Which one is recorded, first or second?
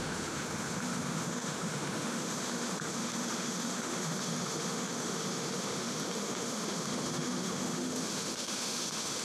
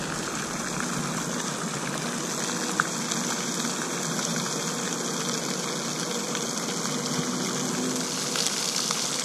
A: second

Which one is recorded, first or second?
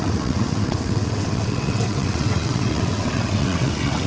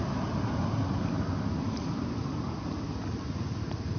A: second